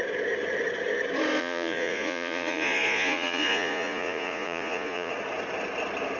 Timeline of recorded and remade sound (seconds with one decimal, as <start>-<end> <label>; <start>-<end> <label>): 0.0-1.4 recorded; 1.4-5.1 remade; 5.1-6.2 recorded